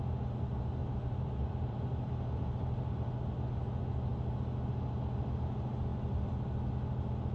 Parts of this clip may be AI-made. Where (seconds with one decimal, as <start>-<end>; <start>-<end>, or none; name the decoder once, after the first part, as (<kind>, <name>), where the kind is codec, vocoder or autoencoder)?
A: 0.8-2.1 (vocoder, BigVGAN v2); 5.9-6.7